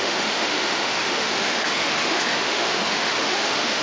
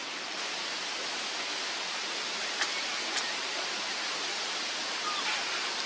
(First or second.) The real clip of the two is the second